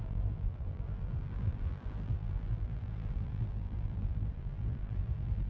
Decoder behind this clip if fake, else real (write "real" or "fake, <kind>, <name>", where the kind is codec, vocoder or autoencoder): fake, vocoder, BigVGAN v2